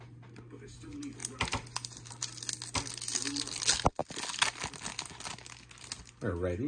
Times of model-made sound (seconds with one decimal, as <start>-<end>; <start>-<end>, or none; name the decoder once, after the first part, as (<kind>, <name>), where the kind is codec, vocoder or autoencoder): none